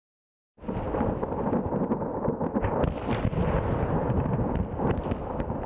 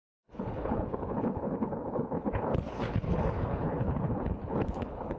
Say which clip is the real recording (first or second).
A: first